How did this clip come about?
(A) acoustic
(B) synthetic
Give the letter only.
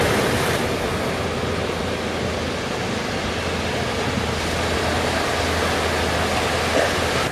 A